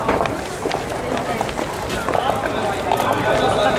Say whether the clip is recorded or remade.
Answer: recorded